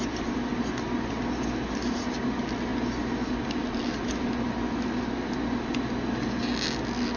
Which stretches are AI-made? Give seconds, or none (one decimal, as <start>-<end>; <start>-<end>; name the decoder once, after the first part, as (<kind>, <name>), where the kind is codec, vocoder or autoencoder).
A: none